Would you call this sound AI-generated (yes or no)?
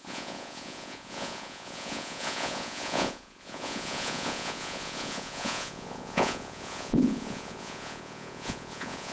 yes